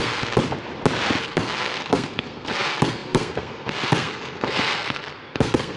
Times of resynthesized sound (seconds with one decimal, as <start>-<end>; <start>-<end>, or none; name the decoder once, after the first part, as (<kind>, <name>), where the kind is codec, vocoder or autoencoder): 0.0-0.4 (codec, SNAC); 1.2-5.8

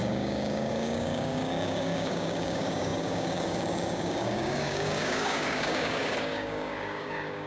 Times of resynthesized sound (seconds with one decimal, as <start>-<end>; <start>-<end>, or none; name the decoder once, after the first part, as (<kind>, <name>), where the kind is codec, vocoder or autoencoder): 0.0-7.5 (codec, DAC)